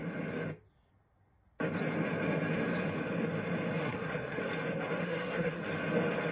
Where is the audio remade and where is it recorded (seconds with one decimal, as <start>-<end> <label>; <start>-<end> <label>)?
0.0-3.8 recorded; 3.8-4.4 remade; 4.4-5.0 recorded; 5.0-5.6 remade; 5.6-6.3 recorded